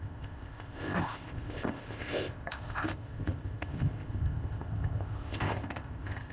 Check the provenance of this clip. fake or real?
fake